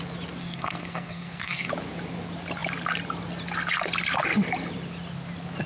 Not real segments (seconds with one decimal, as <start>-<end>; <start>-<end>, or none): 0.4-1.7